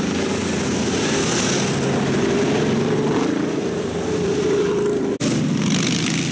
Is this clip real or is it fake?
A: real